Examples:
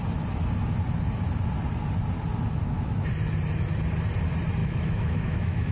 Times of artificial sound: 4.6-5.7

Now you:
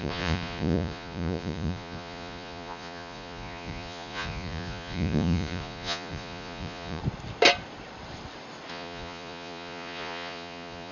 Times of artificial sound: 0.0-7.0; 8.7-10.9

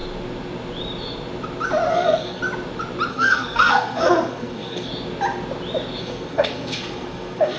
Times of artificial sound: 1.9-2.4; 3.1-4.9; 6.0-7.6